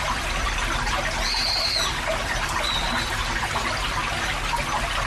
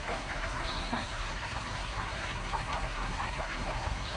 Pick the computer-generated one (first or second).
second